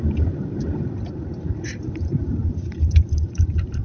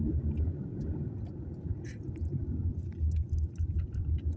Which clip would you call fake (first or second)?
first